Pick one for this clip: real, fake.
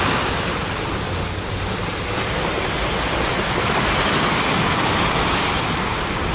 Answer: real